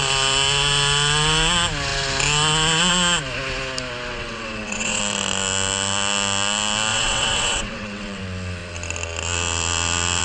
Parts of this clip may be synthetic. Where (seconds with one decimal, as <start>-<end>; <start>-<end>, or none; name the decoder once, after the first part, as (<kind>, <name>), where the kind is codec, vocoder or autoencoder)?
4.1-5.0 (vocoder, WaveNeXt); 6.9-8.2